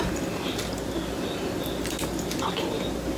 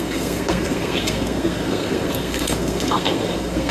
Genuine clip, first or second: first